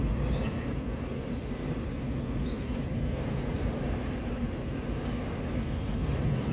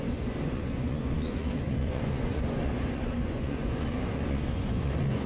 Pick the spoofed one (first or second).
second